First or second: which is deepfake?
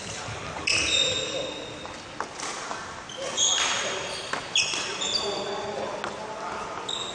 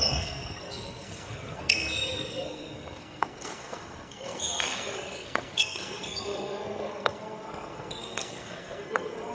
second